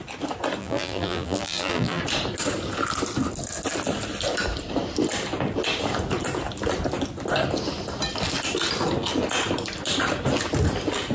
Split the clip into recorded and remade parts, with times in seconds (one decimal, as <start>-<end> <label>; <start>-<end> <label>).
0.0-0.6 recorded; 0.6-2.0 remade; 2.0-11.1 recorded